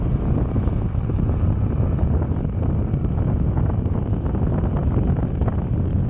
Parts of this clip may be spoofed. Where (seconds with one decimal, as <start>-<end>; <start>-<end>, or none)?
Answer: none